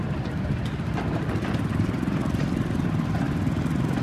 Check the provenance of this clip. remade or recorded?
recorded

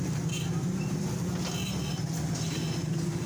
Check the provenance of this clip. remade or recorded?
recorded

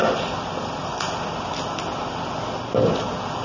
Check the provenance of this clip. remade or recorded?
recorded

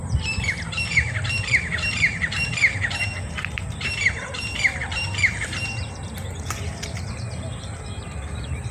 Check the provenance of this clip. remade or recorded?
remade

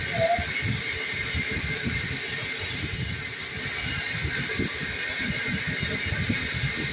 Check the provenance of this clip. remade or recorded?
recorded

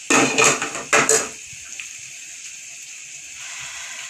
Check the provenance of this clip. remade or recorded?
recorded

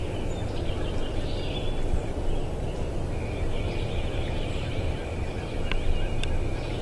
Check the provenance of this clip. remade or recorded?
recorded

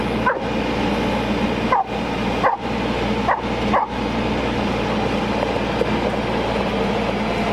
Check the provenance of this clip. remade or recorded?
recorded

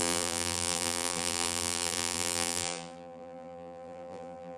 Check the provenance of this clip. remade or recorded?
remade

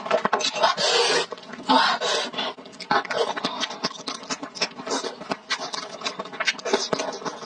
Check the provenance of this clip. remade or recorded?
recorded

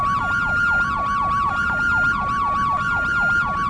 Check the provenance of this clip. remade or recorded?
recorded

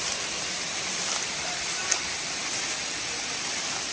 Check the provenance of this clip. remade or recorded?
remade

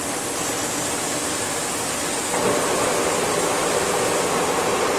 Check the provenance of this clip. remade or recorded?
recorded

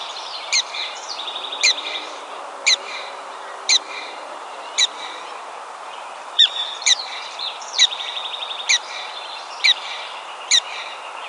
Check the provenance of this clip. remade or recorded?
remade